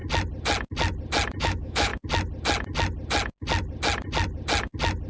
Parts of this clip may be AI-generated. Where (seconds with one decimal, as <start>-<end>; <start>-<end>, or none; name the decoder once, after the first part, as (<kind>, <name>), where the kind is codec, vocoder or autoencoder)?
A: 1.4-1.9 (autoencoder, DAC-VAE)